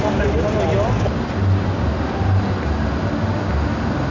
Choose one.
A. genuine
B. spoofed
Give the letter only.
A